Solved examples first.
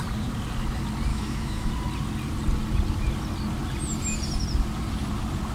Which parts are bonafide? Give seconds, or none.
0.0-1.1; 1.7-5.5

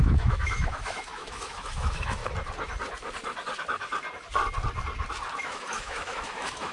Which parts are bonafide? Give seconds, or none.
2.2-5.4

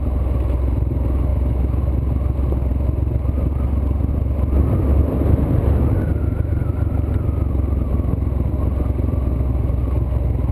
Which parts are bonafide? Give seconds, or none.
0.0-1.3; 1.9-10.5

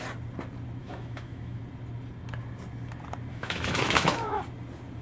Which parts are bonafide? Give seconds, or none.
0.0-0.8; 1.6-3.3; 4.4-5.0